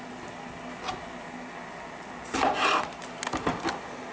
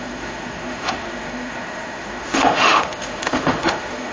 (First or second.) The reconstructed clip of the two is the second